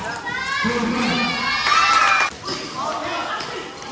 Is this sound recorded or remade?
recorded